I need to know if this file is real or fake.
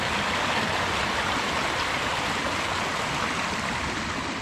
real